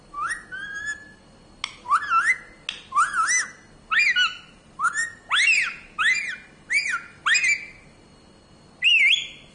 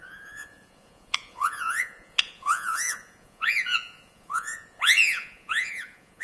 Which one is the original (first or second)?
first